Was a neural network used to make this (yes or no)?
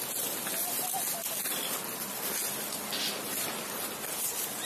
no